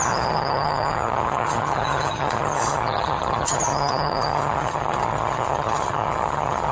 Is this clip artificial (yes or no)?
yes